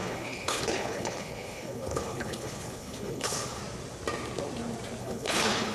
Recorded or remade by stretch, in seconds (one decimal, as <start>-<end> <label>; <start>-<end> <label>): 0.0-3.6 remade; 3.6-5.0 recorded; 5.0-5.7 remade